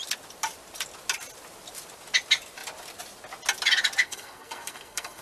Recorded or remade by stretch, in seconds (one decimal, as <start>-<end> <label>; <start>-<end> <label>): 0.0-4.0 recorded; 4.0-5.2 remade